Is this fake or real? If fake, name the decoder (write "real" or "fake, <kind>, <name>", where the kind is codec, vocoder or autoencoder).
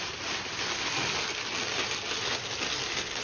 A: real